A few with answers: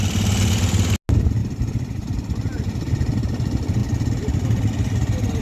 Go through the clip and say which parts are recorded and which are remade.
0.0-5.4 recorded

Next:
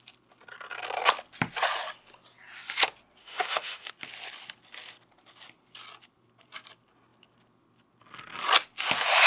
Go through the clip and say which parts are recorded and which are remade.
0.0-3.2 recorded; 3.2-3.9 remade; 3.9-9.3 recorded

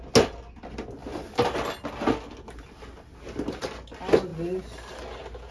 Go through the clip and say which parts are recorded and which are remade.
0.0-5.5 recorded